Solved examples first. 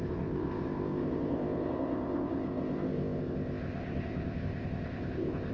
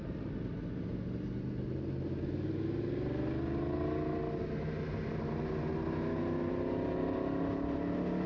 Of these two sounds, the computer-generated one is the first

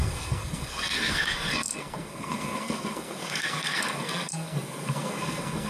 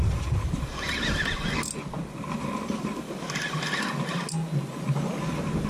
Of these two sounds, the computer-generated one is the first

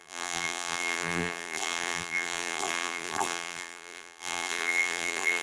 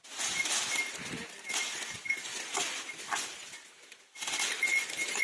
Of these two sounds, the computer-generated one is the first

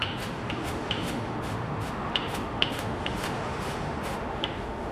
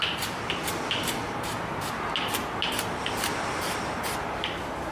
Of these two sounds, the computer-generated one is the first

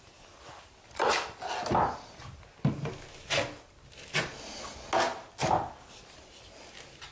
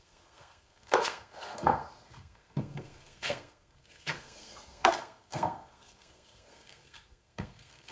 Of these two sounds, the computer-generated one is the second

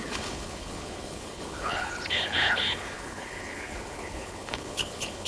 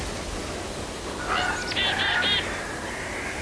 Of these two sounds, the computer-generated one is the first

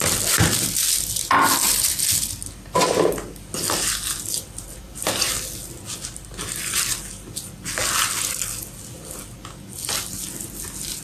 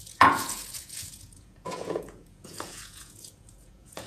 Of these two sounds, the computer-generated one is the second